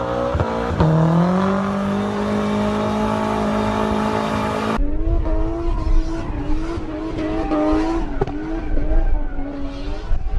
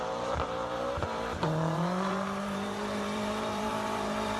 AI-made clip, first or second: second